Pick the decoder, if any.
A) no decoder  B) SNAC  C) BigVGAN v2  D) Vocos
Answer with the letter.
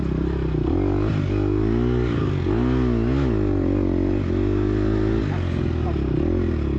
A